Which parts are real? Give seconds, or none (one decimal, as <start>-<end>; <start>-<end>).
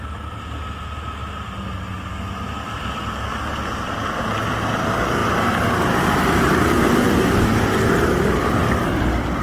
0.0-9.4